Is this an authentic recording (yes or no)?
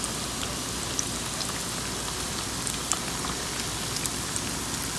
yes